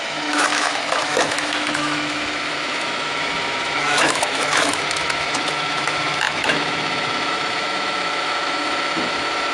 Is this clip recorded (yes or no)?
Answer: no